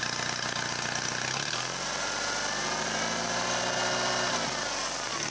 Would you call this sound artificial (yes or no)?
no